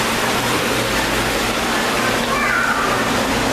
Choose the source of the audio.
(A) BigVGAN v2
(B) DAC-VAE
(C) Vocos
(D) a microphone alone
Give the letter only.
D